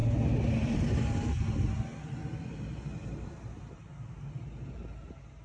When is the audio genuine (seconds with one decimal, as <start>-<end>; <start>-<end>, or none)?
0.0-5.4

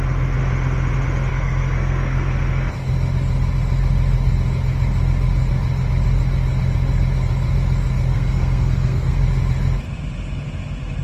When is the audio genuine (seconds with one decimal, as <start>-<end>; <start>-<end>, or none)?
0.0-1.3; 2.7-8.1; 9.2-11.0

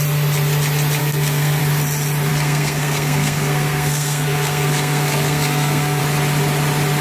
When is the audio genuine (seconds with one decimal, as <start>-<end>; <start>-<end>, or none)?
0.0-1.0; 1.6-2.3; 6.0-7.0